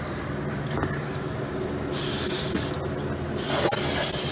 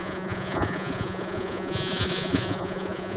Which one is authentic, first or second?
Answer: first